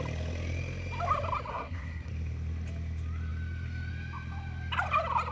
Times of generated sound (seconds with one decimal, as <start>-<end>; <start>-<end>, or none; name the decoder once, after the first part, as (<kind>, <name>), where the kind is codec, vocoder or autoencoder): 1.5-2.1 (codec, SNAC)